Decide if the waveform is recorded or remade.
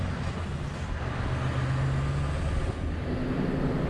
recorded